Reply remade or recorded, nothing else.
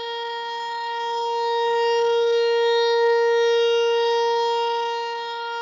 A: remade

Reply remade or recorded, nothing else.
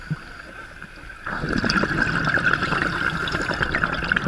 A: recorded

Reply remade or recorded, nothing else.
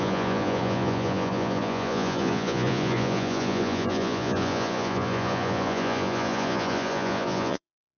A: remade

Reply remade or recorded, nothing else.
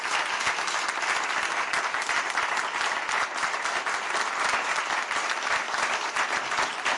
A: recorded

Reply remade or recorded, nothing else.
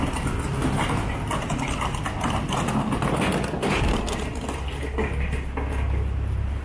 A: recorded